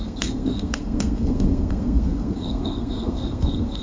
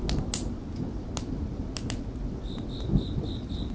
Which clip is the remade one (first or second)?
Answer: first